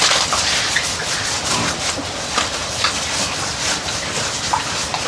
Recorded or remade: recorded